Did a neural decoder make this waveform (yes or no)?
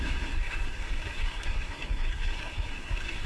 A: yes